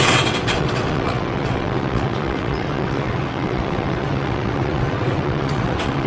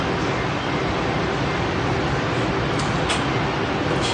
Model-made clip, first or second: first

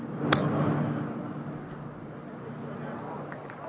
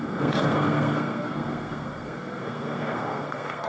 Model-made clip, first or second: second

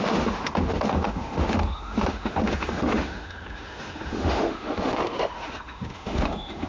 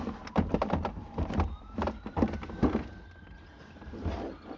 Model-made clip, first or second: first